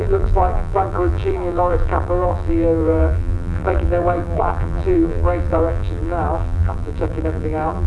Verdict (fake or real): fake